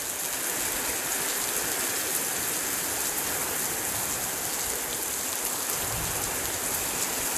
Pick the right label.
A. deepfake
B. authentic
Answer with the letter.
B